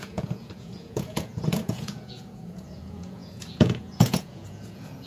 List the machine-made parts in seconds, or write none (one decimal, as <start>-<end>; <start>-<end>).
0.0-5.1